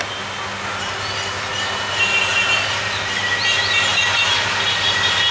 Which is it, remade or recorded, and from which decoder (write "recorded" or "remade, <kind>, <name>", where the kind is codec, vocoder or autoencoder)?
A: recorded